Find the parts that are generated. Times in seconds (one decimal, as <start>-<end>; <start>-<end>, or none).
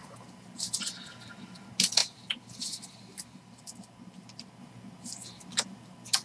none